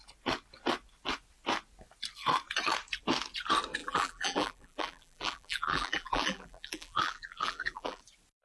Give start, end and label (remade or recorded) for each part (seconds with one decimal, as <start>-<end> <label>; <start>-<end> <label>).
0.0-3.8 recorded; 3.8-8.0 remade; 8.0-8.4 recorded